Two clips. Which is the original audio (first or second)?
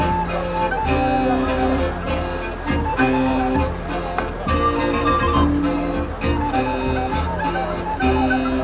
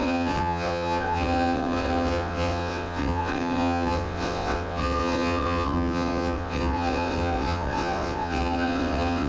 first